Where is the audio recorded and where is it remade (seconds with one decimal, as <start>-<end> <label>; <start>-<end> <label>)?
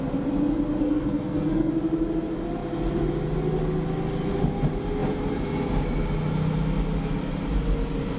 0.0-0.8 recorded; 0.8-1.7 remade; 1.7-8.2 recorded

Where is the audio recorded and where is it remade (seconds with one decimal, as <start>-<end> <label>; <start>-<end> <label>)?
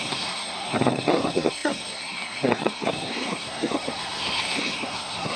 0.0-5.4 remade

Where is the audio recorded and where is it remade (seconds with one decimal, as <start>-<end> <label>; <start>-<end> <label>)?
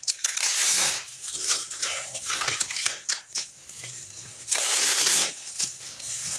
0.0-6.4 remade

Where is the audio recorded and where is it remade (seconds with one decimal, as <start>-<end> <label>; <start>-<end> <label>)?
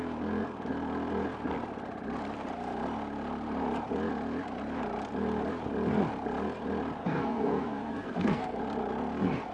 0.0-7.0 recorded; 7.0-8.6 remade; 8.6-9.5 recorded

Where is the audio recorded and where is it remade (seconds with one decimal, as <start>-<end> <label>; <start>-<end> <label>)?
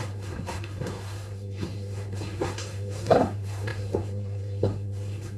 0.0-5.4 remade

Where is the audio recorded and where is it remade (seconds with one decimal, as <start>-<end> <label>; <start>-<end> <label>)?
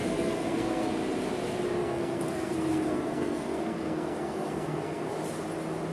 0.0-0.9 remade; 0.9-1.8 recorded; 1.8-5.1 remade; 5.1-5.9 recorded